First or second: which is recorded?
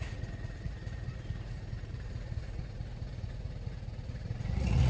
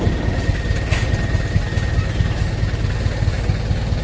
second